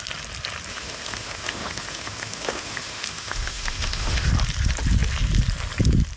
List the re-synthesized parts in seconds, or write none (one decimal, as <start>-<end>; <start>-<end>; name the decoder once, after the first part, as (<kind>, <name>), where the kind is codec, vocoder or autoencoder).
0.7-4.3 (autoencoder, DAC-VAE)